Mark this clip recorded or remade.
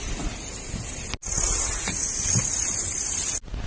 recorded